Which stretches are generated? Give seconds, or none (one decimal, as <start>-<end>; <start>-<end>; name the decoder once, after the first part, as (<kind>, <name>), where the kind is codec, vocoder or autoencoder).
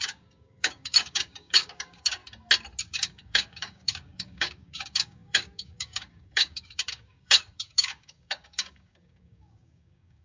0.0-2.2 (codec, DAC); 2.8-10.2